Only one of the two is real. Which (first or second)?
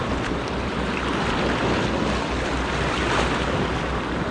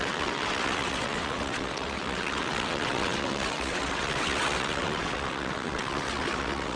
first